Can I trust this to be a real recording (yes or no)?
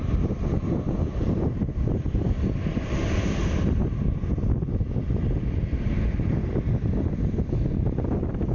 yes